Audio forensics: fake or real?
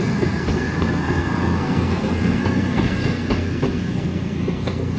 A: fake